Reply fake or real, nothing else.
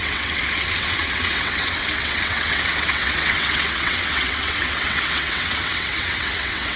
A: fake